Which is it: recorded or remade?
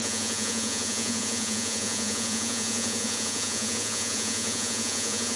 remade